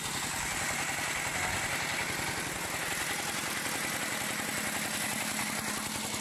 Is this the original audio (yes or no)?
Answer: yes